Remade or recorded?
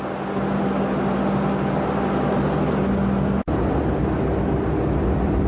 recorded